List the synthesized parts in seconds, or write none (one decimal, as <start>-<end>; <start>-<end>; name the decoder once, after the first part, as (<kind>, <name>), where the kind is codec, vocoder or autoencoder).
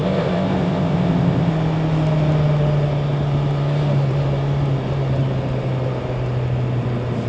0.0-1.5 (codec, ZipCodec)